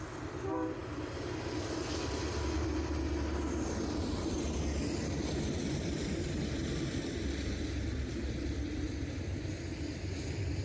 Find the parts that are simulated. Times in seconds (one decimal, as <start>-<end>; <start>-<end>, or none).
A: none